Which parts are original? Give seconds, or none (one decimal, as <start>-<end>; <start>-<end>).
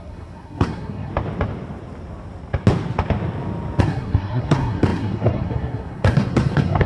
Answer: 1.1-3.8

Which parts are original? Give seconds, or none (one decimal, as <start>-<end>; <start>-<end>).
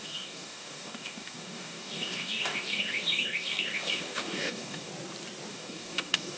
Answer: 4.9-5.5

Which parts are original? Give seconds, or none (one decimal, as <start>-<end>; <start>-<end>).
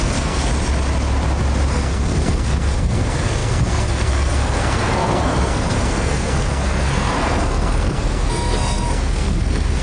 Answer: 0.5-1.7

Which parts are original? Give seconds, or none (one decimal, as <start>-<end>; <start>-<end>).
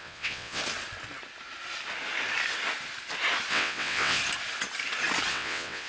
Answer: 0.6-3.5; 4.2-5.3